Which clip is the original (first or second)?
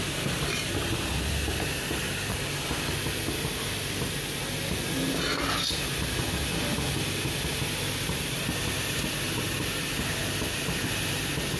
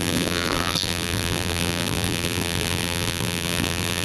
first